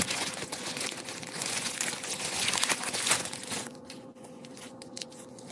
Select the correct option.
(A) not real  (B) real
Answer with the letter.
A